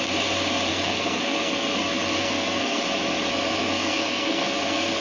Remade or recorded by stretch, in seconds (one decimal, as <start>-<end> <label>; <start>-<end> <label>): 0.0-0.7 recorded; 0.7-2.8 remade; 2.8-3.6 recorded; 3.6-5.0 remade